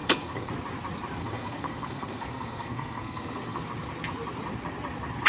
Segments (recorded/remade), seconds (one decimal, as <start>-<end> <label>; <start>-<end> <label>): 0.0-0.5 remade; 0.5-1.2 recorded; 1.2-3.6 remade; 3.6-5.3 recorded